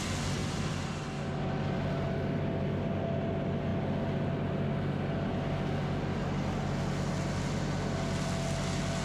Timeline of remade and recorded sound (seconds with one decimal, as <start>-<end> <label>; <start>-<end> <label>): 0.0-0.4 recorded; 0.4-1.0 remade; 1.0-9.0 recorded